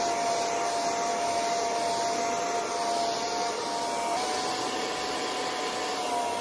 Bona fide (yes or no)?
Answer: yes